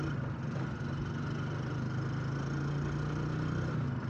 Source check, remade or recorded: recorded